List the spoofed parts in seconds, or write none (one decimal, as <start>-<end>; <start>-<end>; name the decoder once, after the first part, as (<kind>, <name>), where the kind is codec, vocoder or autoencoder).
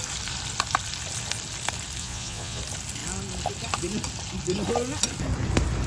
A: 2.0-2.6 (vocoder, Vocos)